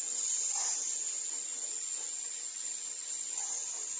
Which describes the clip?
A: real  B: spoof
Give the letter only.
A